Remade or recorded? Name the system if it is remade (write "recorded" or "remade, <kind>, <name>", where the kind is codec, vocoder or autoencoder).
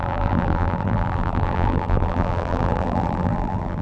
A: remade, vocoder, BigVGAN v2